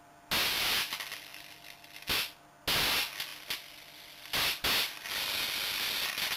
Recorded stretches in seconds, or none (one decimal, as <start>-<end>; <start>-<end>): 0.0-6.4